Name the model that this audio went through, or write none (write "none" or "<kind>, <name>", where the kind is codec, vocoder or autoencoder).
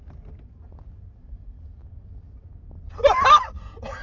none